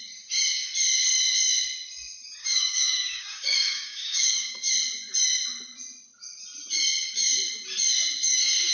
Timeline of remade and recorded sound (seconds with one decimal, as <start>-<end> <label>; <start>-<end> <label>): 0.0-2.4 recorded; 2.4-4.7 remade; 4.7-8.7 recorded